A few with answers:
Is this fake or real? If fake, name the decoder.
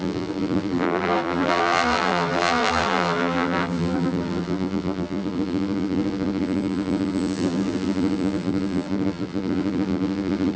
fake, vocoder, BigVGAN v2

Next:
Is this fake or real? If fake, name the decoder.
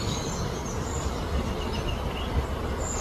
real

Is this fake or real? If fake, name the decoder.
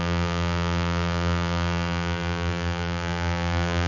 fake, vocoder, BigVGAN v2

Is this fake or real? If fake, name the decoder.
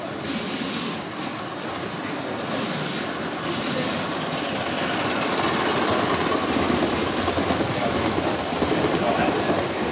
fake, vocoder, BigVGAN v2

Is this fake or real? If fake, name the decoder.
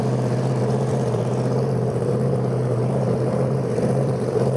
fake, vocoder, BigVGAN v2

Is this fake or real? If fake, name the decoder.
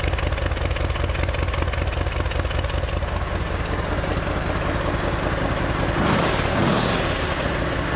real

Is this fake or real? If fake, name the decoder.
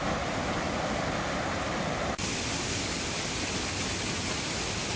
real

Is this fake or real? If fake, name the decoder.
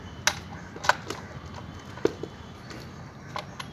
real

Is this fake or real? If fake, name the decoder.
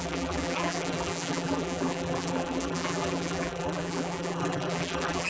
fake, vocoder, BigVGAN v2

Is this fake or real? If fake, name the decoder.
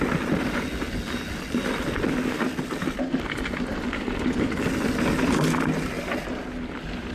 real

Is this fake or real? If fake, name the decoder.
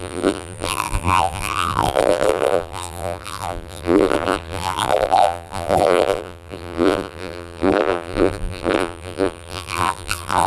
fake, vocoder, BigVGAN v2